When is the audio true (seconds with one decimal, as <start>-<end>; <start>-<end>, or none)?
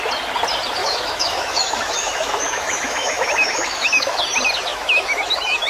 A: 0.0-0.8; 4.2-4.7